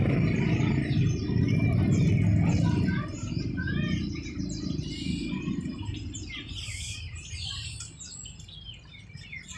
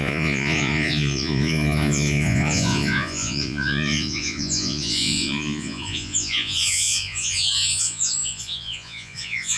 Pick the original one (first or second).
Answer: first